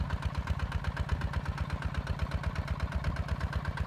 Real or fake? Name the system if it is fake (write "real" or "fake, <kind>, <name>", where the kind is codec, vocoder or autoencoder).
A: real